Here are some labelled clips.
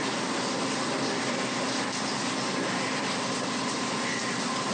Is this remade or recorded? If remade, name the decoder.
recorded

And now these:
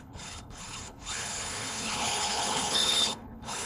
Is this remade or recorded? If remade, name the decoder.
remade, codec, HILCodec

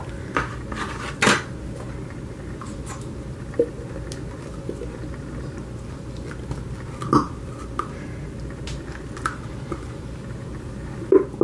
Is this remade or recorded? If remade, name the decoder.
recorded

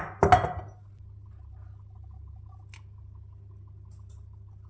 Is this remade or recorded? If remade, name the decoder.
recorded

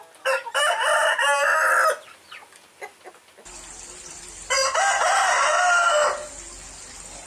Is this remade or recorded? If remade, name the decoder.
recorded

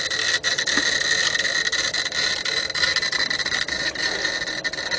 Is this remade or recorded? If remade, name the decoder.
recorded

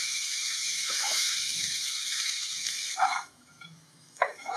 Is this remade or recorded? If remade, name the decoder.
remade, autoencoder, DAC-VAE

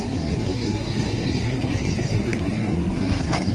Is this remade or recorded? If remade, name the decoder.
remade, codec, SNAC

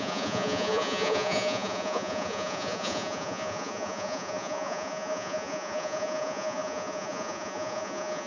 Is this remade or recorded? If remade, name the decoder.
remade, vocoder, Vocos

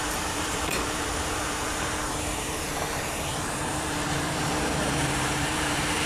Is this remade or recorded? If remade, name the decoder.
remade, vocoder, BigVGAN v2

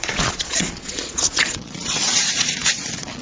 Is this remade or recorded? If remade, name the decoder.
remade, vocoder, Vocos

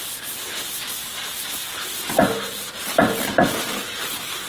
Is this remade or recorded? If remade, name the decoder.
recorded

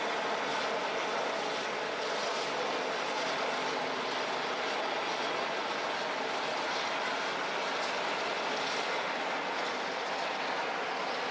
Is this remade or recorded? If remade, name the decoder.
recorded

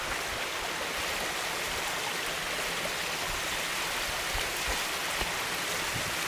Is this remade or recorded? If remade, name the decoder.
recorded